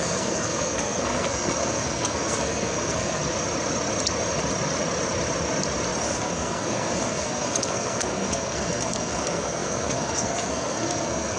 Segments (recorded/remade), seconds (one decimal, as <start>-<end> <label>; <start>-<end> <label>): 0.0-3.2 remade; 3.2-6.0 recorded; 6.0-11.4 remade